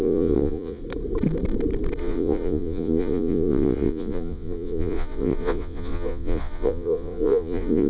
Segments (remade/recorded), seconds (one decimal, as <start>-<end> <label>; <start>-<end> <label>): 0.0-0.8 remade; 0.8-2.0 recorded; 2.0-7.9 remade